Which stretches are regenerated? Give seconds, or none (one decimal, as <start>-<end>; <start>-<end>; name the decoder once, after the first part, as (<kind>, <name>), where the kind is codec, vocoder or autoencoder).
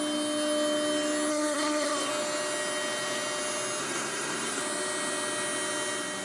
1.3-2.1 (codec, SNAC); 3.8-4.6